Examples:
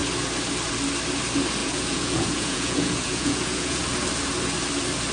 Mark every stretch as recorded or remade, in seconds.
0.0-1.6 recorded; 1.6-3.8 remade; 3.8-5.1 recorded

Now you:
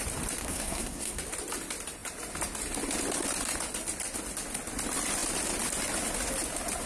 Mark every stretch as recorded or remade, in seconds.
0.0-0.4 recorded; 0.4-1.2 remade; 1.2-6.9 recorded

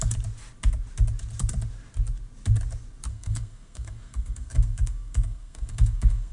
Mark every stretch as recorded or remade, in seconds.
0.0-3.1 recorded; 3.1-6.3 remade

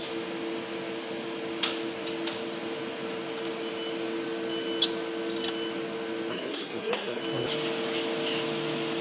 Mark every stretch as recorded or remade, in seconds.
0.0-6.3 recorded; 6.3-7.2 remade; 7.2-9.0 recorded

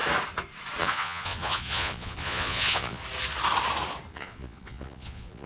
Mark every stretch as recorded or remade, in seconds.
0.0-0.8 recorded; 0.8-3.0 remade; 3.0-4.1 recorded; 4.1-5.5 remade

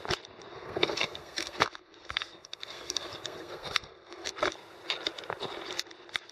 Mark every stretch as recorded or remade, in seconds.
0.0-0.5 recorded; 0.5-4.3 remade; 4.3-6.3 recorded

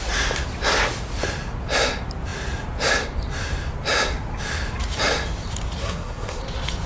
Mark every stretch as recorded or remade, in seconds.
0.0-5.8 recorded; 5.8-6.4 remade; 6.4-6.9 recorded